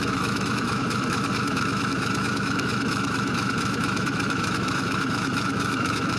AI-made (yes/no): yes